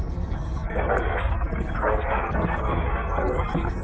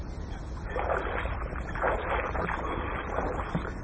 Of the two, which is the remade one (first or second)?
first